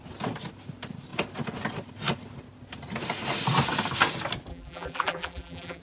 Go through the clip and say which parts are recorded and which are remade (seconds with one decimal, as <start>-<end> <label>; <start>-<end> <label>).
0.0-4.5 recorded; 4.5-5.8 remade